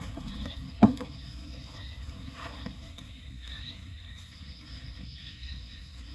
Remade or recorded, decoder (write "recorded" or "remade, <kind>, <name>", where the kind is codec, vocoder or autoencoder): remade, codec, SNAC